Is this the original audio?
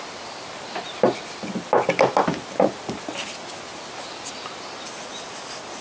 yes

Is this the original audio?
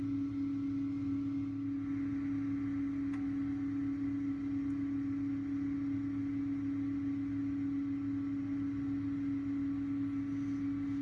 yes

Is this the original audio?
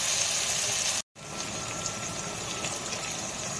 yes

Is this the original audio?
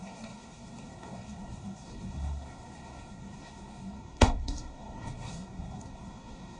no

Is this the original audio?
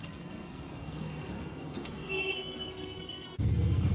no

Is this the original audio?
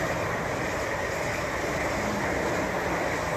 yes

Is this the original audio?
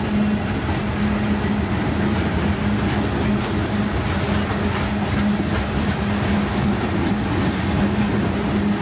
yes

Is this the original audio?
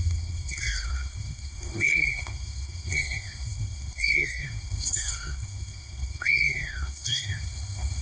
no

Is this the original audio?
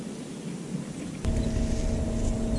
yes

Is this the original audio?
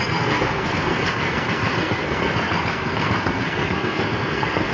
no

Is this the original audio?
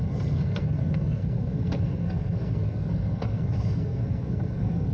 no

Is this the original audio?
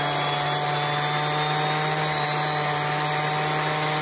yes